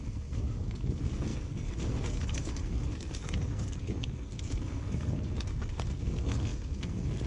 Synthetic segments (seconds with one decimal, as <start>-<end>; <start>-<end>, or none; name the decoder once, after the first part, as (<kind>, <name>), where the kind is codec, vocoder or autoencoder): 0.0-7.3 (codec, SNAC)